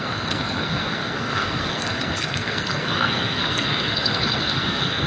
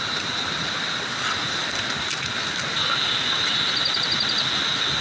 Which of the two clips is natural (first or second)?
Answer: second